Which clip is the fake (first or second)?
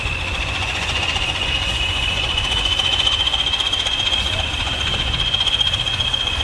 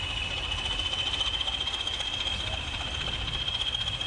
first